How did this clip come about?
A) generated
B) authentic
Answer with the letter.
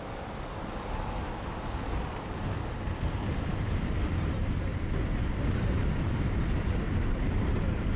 B